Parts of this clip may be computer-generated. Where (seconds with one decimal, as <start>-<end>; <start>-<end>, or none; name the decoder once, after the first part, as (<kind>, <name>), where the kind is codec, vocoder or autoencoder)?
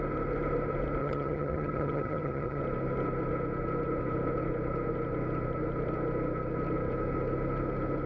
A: 1.0-2.6 (vocoder, HiFi-GAN)